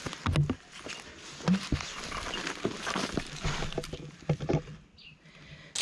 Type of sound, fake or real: real